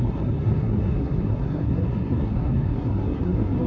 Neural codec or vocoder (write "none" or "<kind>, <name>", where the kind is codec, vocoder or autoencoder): codec, SNAC